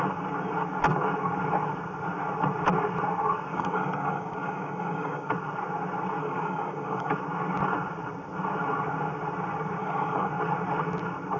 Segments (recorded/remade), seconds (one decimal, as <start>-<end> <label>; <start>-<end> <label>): 0.0-3.5 recorded; 3.5-5.3 remade; 5.3-6.2 recorded; 6.2-7.1 remade; 7.1-9.8 recorded; 9.8-10.3 remade; 10.3-11.4 recorded